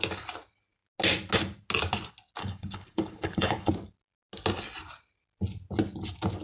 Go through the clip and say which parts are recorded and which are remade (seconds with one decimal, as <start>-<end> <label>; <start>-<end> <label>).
0.0-2.4 recorded; 2.4-3.7 remade; 3.7-6.4 recorded